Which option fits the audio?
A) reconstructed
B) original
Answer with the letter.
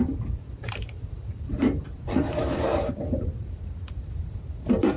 A